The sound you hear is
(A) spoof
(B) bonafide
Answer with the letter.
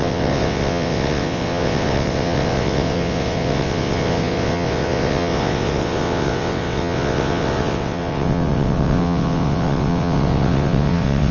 A